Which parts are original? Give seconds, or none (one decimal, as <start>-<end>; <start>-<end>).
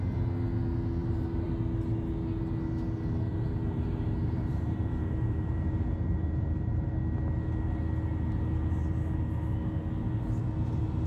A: 0.0-1.0; 1.5-3.3; 6.9-11.1